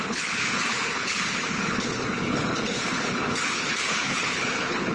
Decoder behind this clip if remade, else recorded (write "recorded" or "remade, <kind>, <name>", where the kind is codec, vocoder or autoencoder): remade, codec, HILCodec